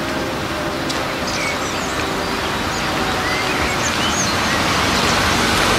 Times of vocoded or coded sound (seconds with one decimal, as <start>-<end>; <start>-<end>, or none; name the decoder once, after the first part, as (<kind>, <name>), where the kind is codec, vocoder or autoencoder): none